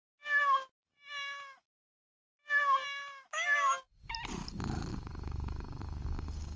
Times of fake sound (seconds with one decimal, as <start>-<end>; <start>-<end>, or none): 4.9-6.6